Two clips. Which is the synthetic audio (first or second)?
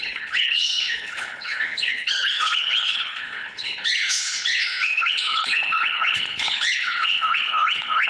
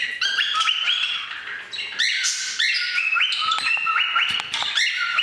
first